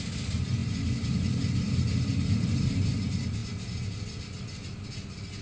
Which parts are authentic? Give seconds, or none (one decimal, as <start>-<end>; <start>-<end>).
0.0-5.4